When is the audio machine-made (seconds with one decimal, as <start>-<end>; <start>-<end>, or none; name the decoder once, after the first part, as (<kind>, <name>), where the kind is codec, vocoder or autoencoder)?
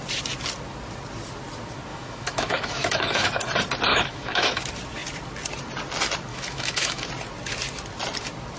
1.9-3.4 (autoencoder, DAC-VAE); 3.9-4.6; 6.3-7.1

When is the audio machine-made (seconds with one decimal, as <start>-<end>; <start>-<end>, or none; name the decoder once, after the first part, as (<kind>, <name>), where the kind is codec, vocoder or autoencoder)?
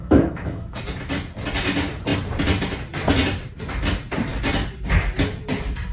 0.0-0.8 (autoencoder, DAC-VAE)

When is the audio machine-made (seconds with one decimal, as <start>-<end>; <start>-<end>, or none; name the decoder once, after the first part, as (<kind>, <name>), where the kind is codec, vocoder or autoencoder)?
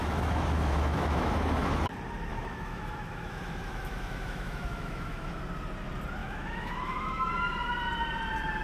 0.0-1.8 (autoencoder, DAC-VAE); 2.3-5.4; 6.2-7.3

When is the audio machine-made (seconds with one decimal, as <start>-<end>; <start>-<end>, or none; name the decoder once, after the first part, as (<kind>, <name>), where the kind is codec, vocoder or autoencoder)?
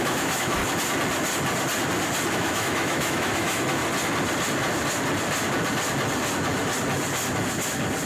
0.0-0.6 (autoencoder, DAC-VAE); 2.3-3.8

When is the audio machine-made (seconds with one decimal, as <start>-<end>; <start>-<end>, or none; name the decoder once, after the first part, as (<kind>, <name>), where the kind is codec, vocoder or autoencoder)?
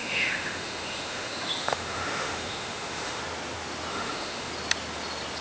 0.0-3.2 (autoencoder, DAC-VAE); 3.9-4.5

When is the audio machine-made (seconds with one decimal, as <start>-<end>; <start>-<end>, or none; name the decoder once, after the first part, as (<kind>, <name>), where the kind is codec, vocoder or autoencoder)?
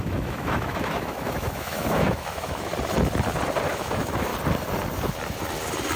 0.0-2.7 (autoencoder, DAC-VAE); 3.7-4.3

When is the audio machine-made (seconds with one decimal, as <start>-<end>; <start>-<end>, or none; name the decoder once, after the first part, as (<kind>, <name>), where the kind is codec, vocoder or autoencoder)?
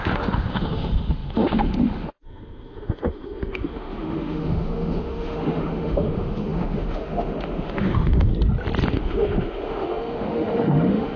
0.0-8.3 (autoencoder, DAC-VAE); 8.9-11.2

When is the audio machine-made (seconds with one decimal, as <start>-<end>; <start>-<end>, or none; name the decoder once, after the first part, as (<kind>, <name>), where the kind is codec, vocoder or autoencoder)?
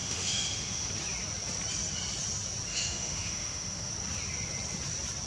0.0-0.9 (autoencoder, DAC-VAE); 2.7-3.9